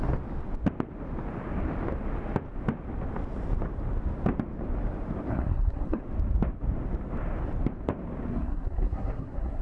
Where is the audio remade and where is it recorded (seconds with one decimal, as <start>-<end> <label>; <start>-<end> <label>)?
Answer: 0.0-5.3 recorded; 5.3-6.0 remade; 6.0-8.3 recorded; 8.3-9.6 remade